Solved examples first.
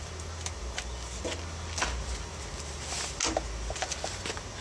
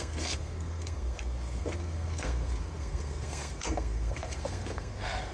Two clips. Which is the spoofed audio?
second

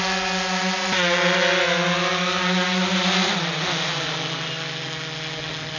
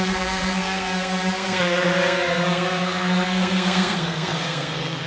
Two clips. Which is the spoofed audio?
second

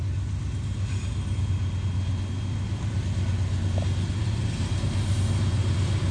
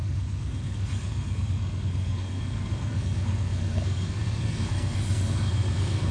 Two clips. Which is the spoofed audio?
second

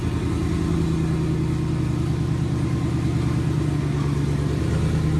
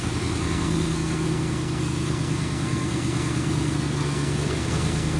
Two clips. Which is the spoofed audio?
second